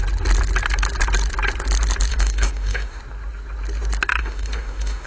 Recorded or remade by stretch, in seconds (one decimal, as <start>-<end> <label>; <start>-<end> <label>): 0.0-2.1 recorded; 2.1-3.0 remade; 3.0-4.2 recorded; 4.2-5.1 remade